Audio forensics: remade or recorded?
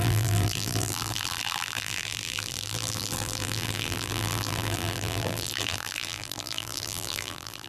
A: remade